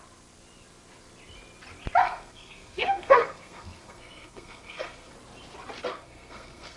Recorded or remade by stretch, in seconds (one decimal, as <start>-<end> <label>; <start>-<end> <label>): 0.0-2.0 recorded; 2.0-5.1 remade; 5.1-5.9 recorded; 5.9-6.8 remade